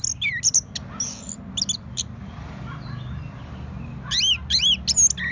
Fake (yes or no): no